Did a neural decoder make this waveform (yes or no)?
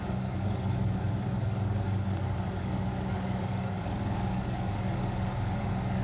yes